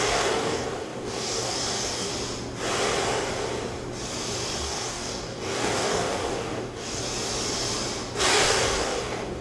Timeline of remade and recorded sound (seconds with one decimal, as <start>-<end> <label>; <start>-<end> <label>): 0.0-2.1 remade; 2.1-4.6 recorded; 4.6-7.0 remade; 7.0-8.2 recorded; 8.2-9.4 remade